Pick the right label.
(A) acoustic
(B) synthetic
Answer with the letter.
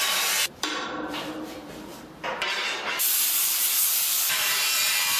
B